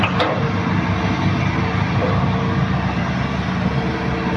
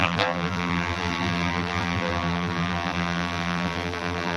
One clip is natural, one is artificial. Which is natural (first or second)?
first